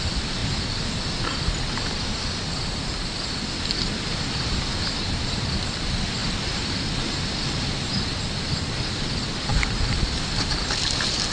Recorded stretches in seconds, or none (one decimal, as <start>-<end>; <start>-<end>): 0.0-11.3